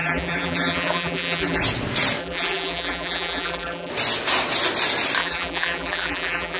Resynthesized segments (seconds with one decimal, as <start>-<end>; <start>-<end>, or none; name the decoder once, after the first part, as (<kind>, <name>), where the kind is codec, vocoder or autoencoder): 0.0-1.6 (vocoder, BigVGAN v2); 2.2-3.9; 5.2-6.6